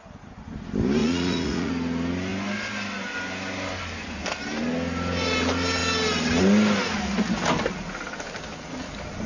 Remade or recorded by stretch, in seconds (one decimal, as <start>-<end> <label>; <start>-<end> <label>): 0.0-1.0 recorded; 1.0-1.7 remade; 1.7-9.3 recorded